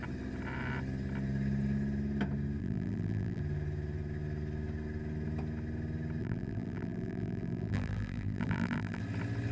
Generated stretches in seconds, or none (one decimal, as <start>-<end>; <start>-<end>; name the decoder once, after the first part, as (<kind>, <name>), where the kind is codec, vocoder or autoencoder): 2.6-3.4 (vocoder, BigVGAN v2); 6.2-9.0